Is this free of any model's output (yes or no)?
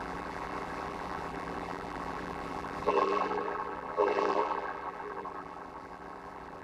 no